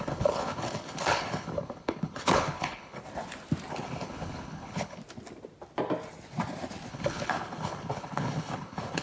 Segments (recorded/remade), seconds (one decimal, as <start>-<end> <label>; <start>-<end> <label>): 0.0-3.0 remade; 3.0-3.7 recorded; 3.7-5.0 remade; 5.0-6.9 recorded; 6.9-9.0 remade